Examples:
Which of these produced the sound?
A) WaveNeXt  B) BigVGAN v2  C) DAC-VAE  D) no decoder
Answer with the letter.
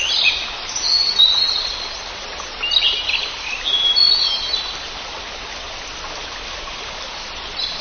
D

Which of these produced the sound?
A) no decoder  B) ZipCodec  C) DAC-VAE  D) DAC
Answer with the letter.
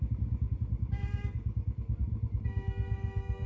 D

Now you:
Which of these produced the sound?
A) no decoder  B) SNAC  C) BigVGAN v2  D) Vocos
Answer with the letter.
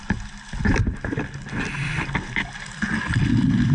A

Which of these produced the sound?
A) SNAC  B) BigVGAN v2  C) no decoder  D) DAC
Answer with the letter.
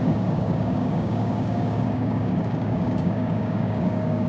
D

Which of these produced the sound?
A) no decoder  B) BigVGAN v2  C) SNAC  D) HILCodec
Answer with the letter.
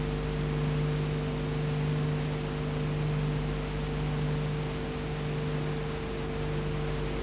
A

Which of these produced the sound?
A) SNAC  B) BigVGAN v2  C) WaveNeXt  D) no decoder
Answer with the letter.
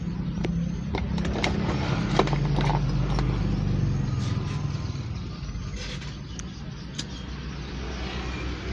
D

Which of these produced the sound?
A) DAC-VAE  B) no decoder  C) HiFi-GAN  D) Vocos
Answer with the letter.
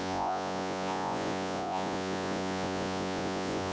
D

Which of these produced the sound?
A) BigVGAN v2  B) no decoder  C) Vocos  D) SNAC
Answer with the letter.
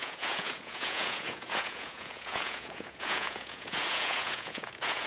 C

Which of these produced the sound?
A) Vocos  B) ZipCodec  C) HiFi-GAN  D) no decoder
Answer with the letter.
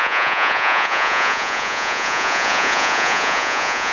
A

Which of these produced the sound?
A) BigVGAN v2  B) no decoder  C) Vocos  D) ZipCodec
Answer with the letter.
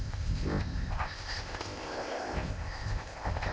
D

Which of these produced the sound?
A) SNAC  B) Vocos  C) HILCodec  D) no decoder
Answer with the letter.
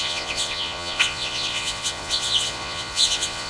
B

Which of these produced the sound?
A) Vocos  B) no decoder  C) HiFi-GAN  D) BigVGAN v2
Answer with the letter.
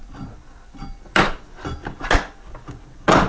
B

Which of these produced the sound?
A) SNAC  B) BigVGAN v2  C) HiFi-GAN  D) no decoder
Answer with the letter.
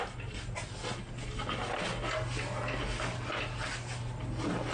D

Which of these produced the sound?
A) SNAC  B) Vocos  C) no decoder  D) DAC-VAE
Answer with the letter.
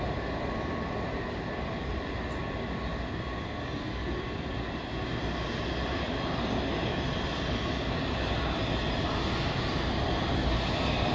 C